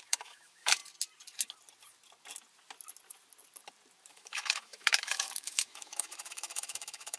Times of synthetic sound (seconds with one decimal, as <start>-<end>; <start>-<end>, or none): 0.0-0.8; 4.1-7.2